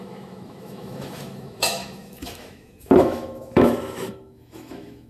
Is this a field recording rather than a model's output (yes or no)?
no